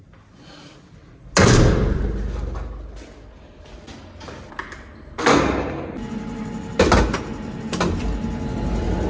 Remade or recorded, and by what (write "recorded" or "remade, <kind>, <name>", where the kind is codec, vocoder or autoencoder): recorded